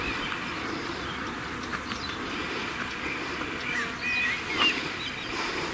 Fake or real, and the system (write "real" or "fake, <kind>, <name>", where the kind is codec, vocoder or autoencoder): real